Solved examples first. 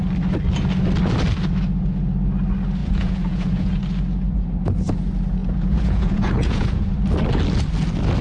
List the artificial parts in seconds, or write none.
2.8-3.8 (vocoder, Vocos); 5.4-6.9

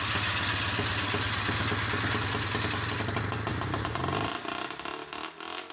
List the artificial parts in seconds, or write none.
3.5-4.0 (vocoder, BigVGAN v2)

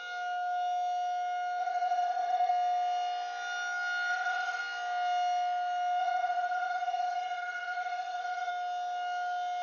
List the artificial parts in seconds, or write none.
1.6-2.5 (vocoder, WaveNeXt); 4.1-4.6; 6.0-8.5

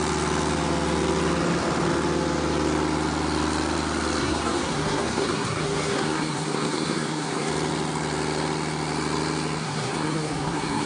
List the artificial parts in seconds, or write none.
4.2-7.5 (codec, SNAC); 9.6-10.9

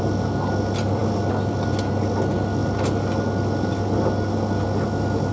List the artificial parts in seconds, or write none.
none